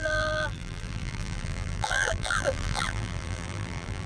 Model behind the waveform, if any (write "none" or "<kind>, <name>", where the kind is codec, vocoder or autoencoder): vocoder, BigVGAN v2